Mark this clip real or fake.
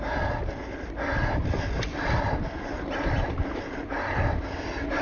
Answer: real